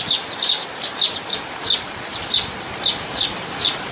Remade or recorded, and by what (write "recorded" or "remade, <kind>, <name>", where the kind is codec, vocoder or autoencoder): recorded